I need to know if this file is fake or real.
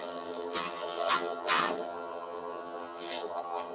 fake